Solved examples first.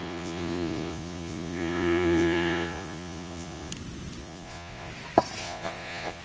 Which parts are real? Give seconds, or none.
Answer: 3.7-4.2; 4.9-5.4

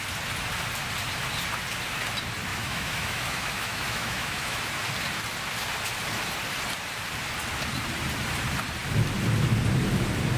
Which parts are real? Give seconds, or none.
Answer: 0.0-2.5; 4.6-10.4